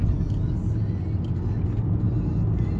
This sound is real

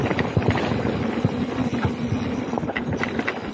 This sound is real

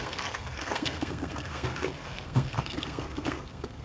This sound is fake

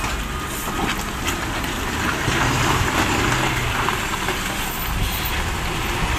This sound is real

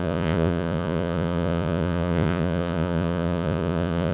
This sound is fake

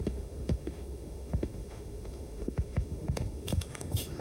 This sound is fake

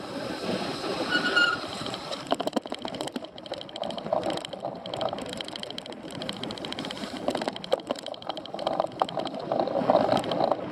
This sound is real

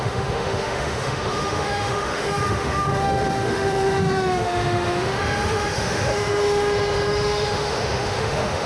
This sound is fake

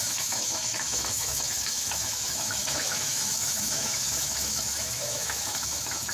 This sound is fake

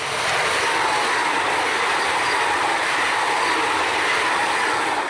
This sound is real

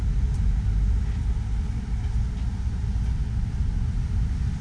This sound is real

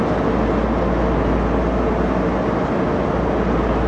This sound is real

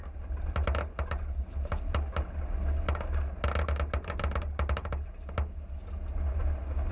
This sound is real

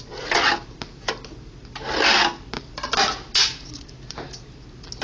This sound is real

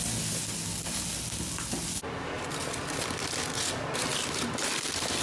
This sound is real